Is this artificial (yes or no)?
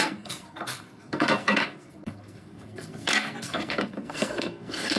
yes